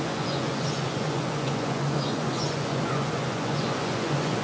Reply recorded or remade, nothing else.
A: remade